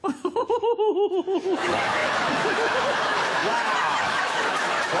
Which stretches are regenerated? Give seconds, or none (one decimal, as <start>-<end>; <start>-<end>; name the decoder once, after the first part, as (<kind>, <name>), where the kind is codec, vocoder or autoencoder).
0.0-5.0 (autoencoder, DAC-VAE)